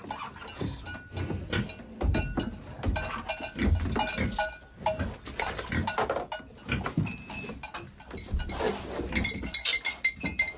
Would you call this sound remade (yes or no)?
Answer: no